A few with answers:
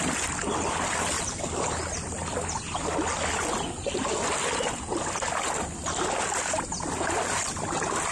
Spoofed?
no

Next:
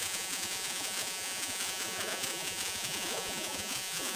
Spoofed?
yes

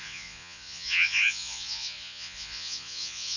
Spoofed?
yes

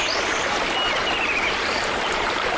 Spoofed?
no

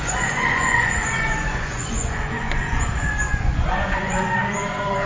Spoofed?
yes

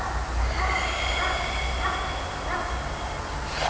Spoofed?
no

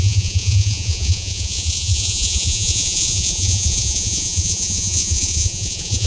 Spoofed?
yes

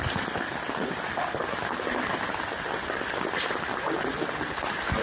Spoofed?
no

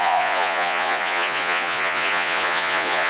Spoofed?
yes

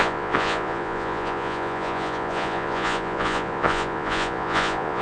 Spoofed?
yes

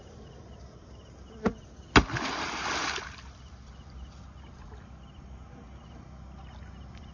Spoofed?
no